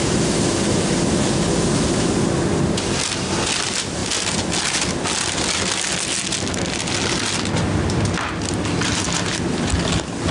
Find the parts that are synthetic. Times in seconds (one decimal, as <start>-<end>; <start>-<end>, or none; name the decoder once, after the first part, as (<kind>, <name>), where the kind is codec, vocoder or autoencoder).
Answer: none